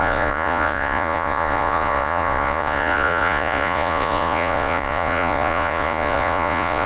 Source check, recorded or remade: remade